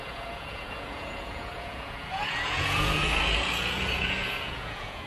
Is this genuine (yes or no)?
no